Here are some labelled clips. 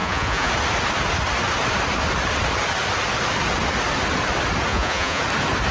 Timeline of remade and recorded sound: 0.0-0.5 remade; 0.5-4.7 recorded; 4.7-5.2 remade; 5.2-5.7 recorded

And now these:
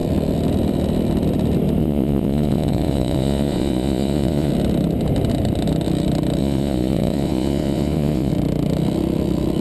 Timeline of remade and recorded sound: 0.0-1.8 recorded; 1.8-4.5 remade; 4.5-6.4 recorded; 6.4-8.3 remade; 8.3-9.6 recorded

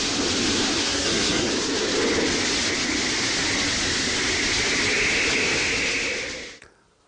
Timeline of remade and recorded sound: 0.0-0.8 recorded; 0.8-1.5 remade; 1.5-7.1 recorded